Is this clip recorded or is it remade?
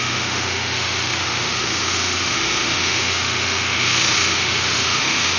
remade